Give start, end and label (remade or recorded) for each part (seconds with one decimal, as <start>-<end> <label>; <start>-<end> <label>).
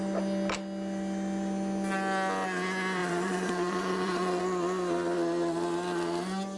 0.0-3.0 recorded; 3.0-4.4 remade; 4.4-6.6 recorded